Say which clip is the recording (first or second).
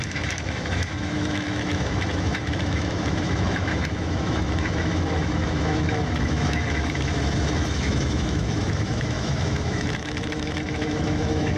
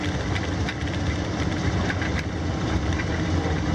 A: second